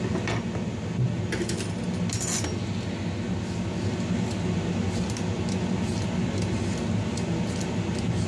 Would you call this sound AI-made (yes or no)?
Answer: no